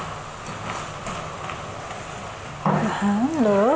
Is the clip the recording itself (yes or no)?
yes